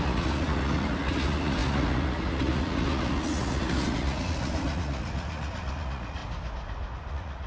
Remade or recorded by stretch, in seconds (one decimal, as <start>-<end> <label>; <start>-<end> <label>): 0.0-6.2 remade; 6.2-7.1 recorded; 7.1-7.5 remade